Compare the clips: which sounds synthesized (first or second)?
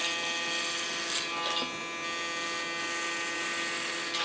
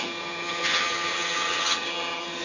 second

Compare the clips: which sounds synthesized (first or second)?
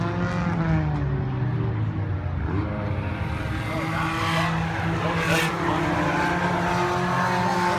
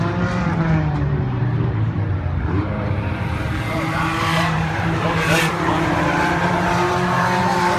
second